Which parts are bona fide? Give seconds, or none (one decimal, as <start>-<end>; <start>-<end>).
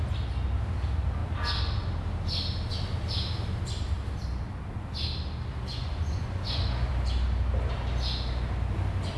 0.0-5.7; 6.9-9.2